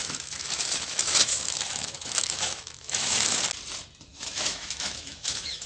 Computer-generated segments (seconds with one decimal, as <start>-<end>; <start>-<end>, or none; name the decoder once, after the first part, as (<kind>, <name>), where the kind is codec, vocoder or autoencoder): 0.0-3.4 (autoencoder, DAC-VAE); 4.1-5.7